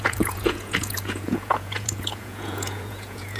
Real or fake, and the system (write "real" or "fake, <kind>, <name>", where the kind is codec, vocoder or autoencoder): fake, vocoder, Vocos